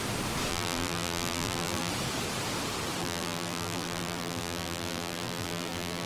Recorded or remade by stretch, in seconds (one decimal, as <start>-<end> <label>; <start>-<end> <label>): 0.0-0.5 recorded; 0.5-1.9 remade; 1.9-3.0 recorded; 3.0-6.1 remade